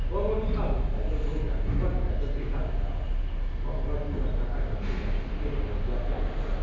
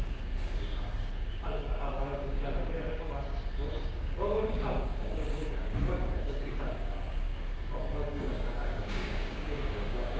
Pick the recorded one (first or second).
first